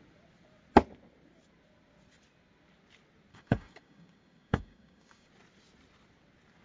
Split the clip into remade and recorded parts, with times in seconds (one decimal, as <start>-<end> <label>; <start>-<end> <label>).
0.0-3.3 recorded; 3.3-5.3 remade; 5.3-6.6 recorded